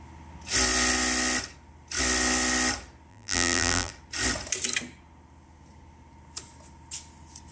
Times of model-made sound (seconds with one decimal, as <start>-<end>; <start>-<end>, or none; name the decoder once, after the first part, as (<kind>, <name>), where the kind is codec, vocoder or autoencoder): 3.1-3.9 (vocoder, BigVGAN v2)

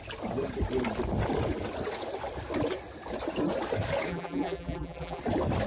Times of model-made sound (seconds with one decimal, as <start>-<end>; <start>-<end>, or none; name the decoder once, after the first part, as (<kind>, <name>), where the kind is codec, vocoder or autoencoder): 4.1-5.2 (vocoder, BigVGAN v2)